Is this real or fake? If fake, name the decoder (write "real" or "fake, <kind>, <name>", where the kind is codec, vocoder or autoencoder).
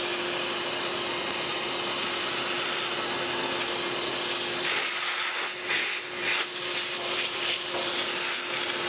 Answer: real